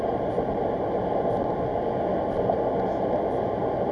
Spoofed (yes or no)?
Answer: no